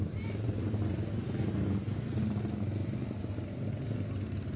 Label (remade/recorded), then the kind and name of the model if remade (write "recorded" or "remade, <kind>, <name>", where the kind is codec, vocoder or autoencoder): recorded